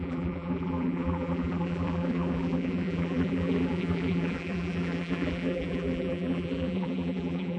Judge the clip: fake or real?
fake